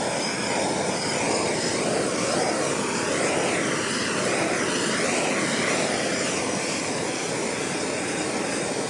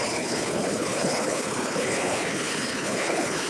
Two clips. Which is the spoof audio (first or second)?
second